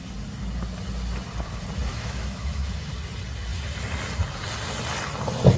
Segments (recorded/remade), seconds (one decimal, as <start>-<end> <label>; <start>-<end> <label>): 0.0-1.9 recorded; 1.9-2.9 remade; 2.9-5.6 recorded